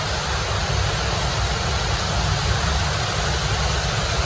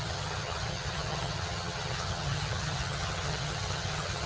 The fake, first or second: second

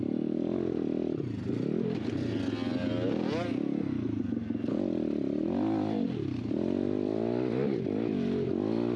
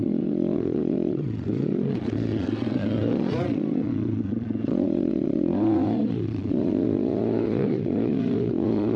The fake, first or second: second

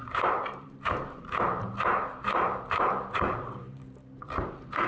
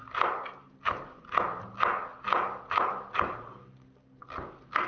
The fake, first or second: first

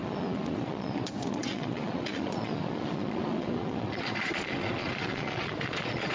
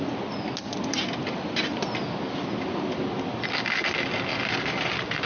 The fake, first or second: first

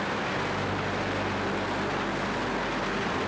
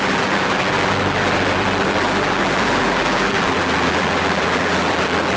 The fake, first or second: second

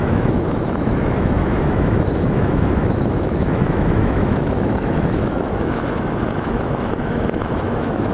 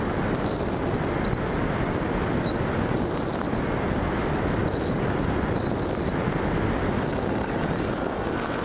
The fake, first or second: first